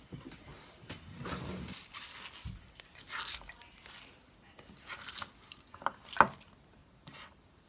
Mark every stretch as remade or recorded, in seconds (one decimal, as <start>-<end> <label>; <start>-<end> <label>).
0.0-0.5 recorded; 0.5-2.1 remade; 2.1-6.8 recorded; 6.8-7.7 remade